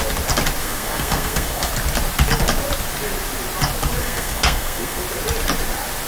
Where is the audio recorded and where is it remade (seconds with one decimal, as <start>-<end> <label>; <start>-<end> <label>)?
0.0-0.6 recorded; 0.6-1.7 remade; 1.7-4.0 recorded; 4.0-5.0 remade; 5.0-6.1 recorded